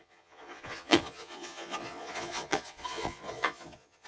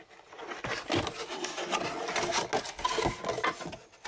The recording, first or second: second